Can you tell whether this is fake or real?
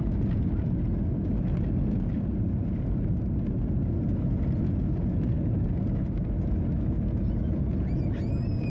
real